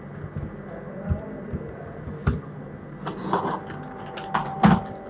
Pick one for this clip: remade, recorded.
recorded